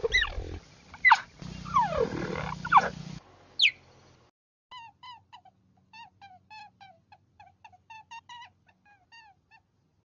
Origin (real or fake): real